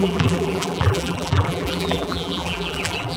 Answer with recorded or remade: remade